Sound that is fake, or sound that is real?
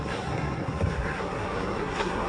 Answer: fake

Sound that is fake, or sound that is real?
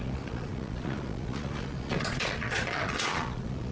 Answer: fake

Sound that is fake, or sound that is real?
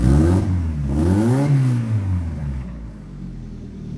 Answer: fake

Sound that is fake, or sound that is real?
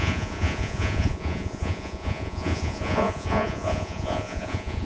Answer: fake